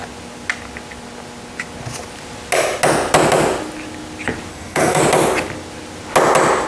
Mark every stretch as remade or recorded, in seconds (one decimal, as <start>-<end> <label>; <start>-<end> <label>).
0.0-4.5 recorded; 4.5-5.0 remade; 5.0-6.7 recorded